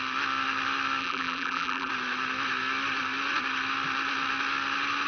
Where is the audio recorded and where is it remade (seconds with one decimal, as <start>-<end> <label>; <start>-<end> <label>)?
0.0-1.0 recorded; 1.0-1.9 remade; 1.9-5.1 recorded